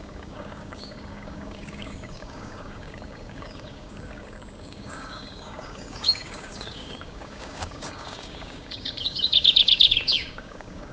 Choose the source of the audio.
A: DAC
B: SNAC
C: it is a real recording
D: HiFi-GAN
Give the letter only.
A